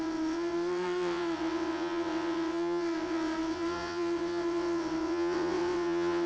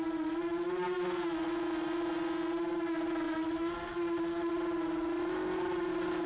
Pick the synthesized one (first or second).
first